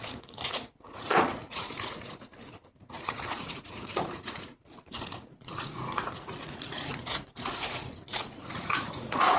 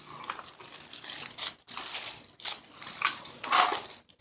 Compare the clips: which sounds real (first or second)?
second